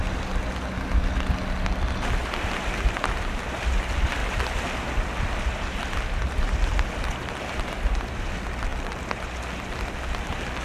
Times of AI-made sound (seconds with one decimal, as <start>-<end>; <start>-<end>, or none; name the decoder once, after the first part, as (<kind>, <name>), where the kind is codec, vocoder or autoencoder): none